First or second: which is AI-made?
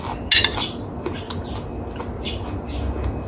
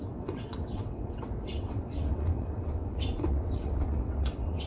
second